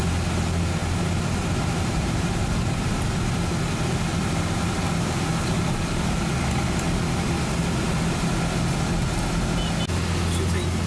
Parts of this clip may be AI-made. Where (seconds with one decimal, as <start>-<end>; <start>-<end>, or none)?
0.8-3.2; 4.1-6.2